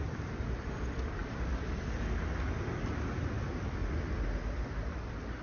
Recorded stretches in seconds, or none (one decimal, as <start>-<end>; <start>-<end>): 3.8-4.6